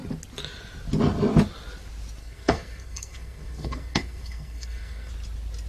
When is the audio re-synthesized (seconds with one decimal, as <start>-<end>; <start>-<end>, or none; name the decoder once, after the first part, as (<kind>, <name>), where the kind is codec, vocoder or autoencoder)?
2.2-5.1 (codec, SNAC)